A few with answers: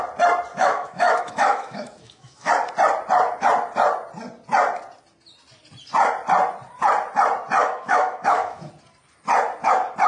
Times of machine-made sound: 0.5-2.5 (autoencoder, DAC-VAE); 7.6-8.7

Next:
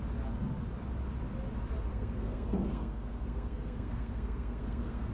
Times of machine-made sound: 1.9-5.1 (codec, SNAC)

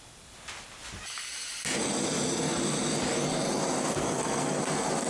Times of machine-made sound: 3.9-4.6 (codec, SNAC)

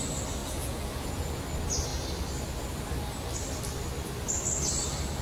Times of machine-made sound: 0.4-1.4 (vocoder, Vocos)

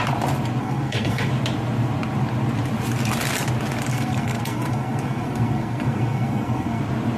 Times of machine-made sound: 0.6-1.3 (codec, SNAC); 3.9-6.8

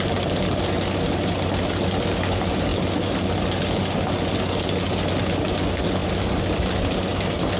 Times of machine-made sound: none

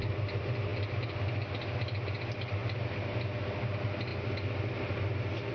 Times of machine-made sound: 2.6-3.2 (vocoder, BigVGAN v2)

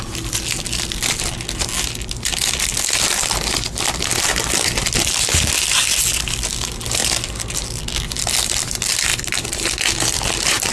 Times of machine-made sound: none